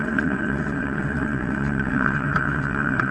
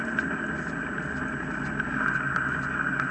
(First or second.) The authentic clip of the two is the second